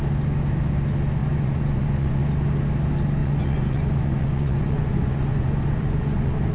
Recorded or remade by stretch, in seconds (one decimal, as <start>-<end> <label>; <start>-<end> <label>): 0.0-1.2 recorded; 1.2-2.2 remade; 2.2-3.2 recorded; 3.2-6.5 remade